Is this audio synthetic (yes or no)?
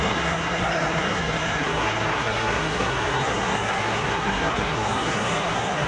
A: yes